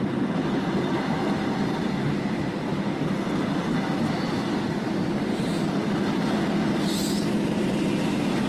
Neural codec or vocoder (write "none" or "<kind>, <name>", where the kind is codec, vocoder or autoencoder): none